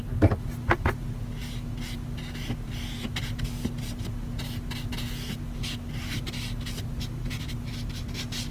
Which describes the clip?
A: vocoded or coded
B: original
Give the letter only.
B